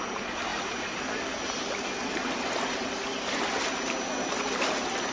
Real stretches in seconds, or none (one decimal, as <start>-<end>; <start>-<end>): 0.0-5.1